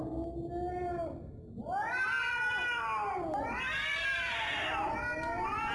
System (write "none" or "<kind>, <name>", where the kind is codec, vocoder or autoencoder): none